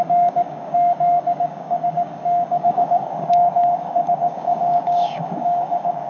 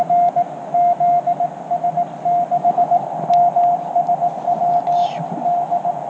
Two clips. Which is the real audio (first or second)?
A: second